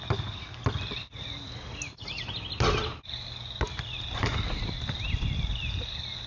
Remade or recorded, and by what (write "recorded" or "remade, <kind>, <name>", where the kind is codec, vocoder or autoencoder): recorded